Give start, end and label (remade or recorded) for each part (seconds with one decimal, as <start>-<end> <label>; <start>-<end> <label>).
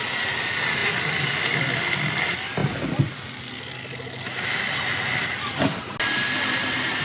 0.0-0.8 recorded; 0.8-1.6 remade; 1.6-7.0 recorded